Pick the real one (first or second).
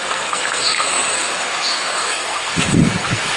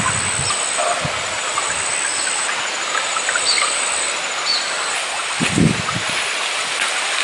second